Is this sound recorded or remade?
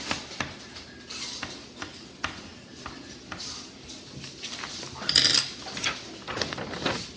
recorded